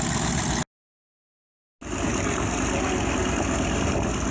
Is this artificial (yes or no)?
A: no